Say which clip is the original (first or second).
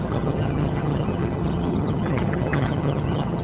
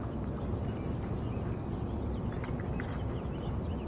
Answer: second